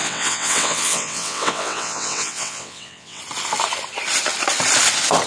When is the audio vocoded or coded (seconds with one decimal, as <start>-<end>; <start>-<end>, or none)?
0.0-3.2